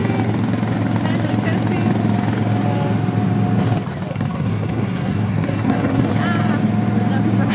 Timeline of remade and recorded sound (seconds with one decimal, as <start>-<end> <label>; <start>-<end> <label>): 0.0-4.1 recorded; 4.1-6.1 remade; 6.1-7.5 recorded

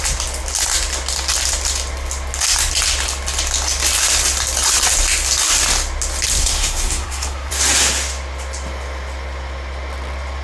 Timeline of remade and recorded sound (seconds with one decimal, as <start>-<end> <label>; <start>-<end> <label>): 0.0-6.4 recorded; 6.4-7.5 remade; 7.5-10.4 recorded

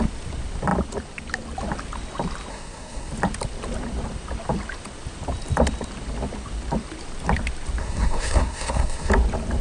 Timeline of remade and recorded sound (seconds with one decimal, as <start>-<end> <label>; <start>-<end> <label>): 0.0-2.5 recorded; 2.5-3.1 remade; 3.1-7.8 recorded; 7.8-9.1 remade; 9.1-9.6 recorded

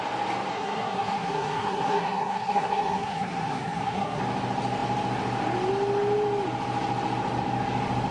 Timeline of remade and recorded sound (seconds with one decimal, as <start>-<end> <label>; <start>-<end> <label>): 0.0-0.5 recorded; 0.5-4.2 remade; 4.2-8.1 recorded

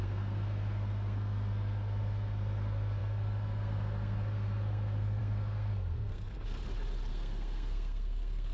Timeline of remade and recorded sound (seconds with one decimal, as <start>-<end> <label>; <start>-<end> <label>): 0.0-6.6 remade; 6.6-7.1 recorded; 7.1-8.5 remade